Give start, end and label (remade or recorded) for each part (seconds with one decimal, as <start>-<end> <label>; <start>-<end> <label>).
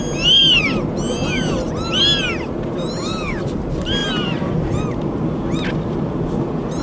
0.0-6.8 recorded